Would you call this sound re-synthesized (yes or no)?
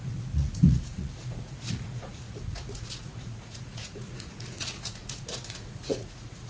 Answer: yes